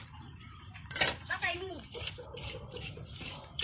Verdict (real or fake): fake